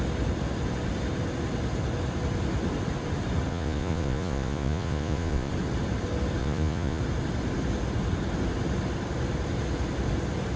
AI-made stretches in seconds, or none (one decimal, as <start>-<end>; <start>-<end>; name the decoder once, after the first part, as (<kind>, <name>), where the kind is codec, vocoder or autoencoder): 3.5-5.5 (vocoder, Vocos); 6.4-7.0